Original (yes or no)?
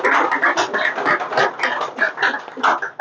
yes